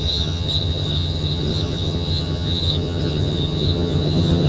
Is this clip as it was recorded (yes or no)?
no